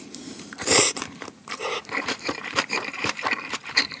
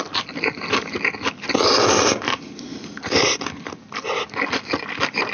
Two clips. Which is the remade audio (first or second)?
first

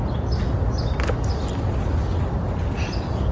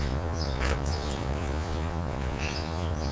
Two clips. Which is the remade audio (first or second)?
second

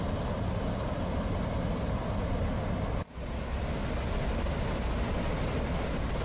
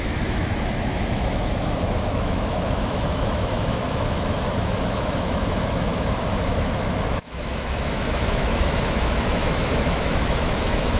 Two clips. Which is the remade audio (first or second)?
second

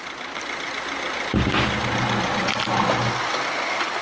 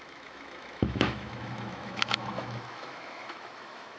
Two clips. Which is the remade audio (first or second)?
second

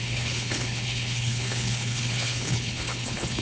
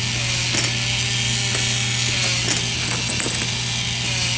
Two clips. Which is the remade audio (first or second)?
first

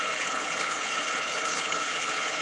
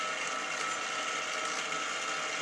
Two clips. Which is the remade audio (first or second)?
first